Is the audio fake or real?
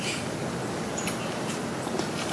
real